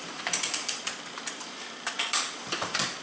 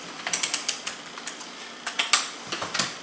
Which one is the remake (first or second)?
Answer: first